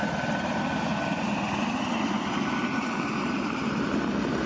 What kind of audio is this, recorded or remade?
recorded